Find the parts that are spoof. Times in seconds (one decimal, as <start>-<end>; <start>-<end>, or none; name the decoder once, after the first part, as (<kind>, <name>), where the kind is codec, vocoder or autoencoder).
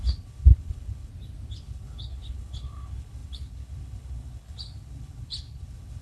0.0-1.1 (codec, HILCodec); 1.6-6.0